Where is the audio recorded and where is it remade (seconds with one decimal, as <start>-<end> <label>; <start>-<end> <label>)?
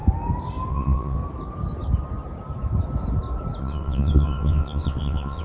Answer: 0.0-0.7 recorded; 0.7-1.2 remade; 1.2-3.6 recorded; 3.6-5.4 remade